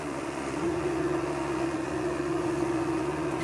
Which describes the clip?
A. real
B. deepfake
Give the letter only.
B